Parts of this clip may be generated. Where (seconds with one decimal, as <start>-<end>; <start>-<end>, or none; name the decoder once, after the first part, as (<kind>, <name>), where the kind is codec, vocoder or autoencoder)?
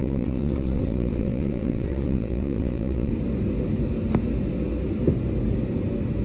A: 0.0-3.1 (vocoder, WaveNeXt)